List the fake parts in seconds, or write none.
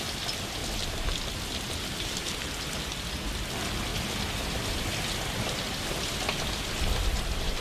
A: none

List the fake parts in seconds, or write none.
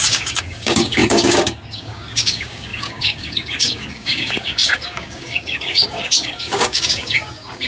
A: 0.0-7.7 (codec, DAC)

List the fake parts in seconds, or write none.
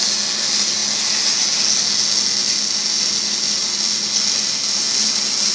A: none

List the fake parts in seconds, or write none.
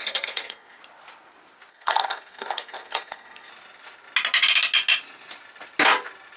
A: 0.0-0.8 (codec, SNAC); 1.7-3.5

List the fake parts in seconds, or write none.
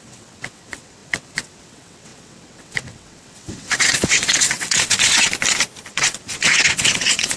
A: 0.0-5.3 (vocoder, WaveNeXt); 5.9-7.4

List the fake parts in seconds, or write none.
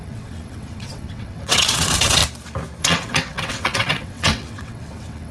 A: 0.0-2.2 (vocoder, WaveNeXt); 2.8-5.3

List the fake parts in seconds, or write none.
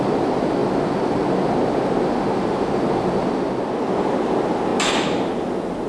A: none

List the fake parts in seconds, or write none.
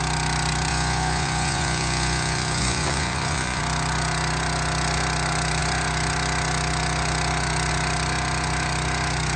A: 0.7-3.6 (vocoder, Vocos)